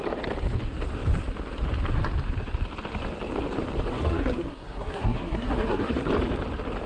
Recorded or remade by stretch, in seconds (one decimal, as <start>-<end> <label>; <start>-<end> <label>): 0.0-3.9 recorded; 3.9-6.1 remade; 6.1-6.9 recorded